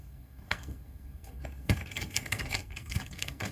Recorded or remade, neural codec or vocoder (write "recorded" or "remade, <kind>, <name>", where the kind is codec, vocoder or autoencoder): remade, codec, SNAC